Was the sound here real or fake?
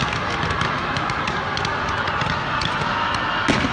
real